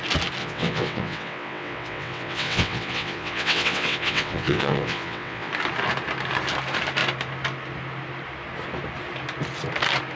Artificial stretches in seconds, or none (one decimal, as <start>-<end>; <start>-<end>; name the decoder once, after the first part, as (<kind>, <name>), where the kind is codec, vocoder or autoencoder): 0.4-5.5 (vocoder, WaveNeXt)